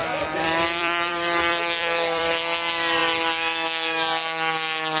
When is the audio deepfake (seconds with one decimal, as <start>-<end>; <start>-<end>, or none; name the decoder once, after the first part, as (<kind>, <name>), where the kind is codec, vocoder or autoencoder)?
0.0-2.4 (vocoder, BigVGAN v2)